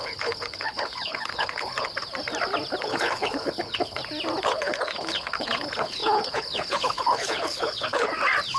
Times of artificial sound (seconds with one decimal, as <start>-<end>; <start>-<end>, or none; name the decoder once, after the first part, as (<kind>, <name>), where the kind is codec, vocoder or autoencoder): 0.0-1.9 (codec, HILCodec); 2.8-4.0; 4.5-8.1